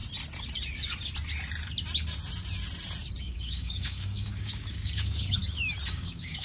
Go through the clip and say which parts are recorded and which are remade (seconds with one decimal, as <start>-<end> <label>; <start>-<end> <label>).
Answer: 0.0-3.2 recorded; 3.2-5.4 remade; 5.4-5.9 recorded; 5.9-6.4 remade